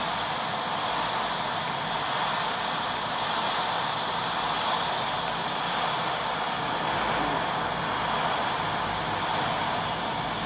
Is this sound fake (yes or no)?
no